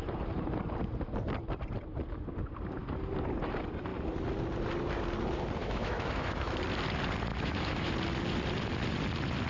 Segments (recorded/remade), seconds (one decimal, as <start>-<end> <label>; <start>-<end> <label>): 0.0-5.6 recorded; 5.6-6.6 remade; 6.6-7.3 recorded; 7.3-7.9 remade; 7.9-9.5 recorded